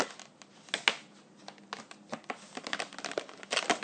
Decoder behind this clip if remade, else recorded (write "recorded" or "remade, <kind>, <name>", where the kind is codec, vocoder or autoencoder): recorded